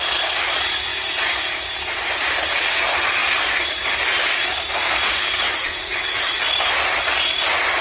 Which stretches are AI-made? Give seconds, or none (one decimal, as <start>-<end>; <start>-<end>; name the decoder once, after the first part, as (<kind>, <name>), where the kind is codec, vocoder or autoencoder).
5.6-6.4 (autoencoder, DAC-VAE)